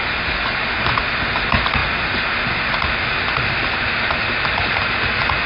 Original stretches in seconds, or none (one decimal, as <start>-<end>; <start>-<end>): 0.0-5.5